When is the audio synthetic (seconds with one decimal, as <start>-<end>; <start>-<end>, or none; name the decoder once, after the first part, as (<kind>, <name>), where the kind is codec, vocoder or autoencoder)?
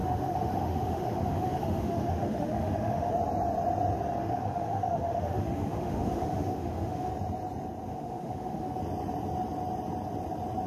0.0-3.1 (autoencoder, DAC-VAE); 4.2-7.1; 7.9-8.8